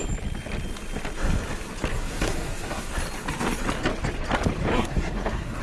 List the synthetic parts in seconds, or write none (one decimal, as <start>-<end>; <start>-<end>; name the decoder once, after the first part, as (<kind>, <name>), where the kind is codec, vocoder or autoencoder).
1.9-2.9 (codec, SNAC); 4.7-5.6